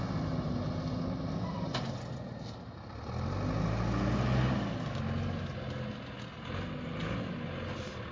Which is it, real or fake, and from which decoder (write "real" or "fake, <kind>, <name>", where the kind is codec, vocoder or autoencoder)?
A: real